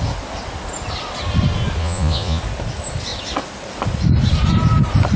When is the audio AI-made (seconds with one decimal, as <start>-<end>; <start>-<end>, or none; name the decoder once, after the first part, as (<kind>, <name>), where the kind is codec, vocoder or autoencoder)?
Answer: 1.8-2.4 (vocoder, Vocos)